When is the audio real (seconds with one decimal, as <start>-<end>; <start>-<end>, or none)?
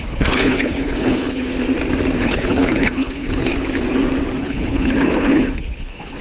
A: 1.5-2.2; 3.5-4.4